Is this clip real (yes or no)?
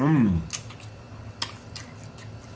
yes